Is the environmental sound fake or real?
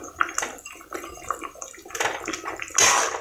real